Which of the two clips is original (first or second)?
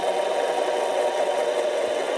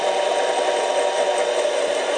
second